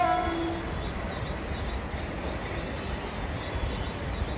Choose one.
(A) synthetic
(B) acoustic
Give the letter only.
B